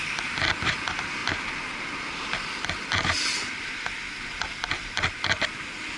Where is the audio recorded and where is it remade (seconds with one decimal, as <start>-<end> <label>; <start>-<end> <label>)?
0.0-6.0 recorded